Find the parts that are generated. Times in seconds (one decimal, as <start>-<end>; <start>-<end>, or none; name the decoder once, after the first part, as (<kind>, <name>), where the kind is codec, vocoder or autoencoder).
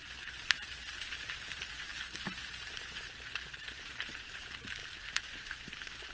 0.0-1.9 (vocoder, BigVGAN v2); 2.4-6.1